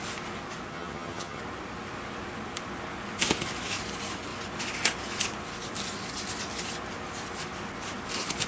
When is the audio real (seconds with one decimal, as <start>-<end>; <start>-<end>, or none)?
0.0-0.7; 1.4-8.5